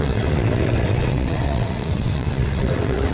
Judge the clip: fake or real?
fake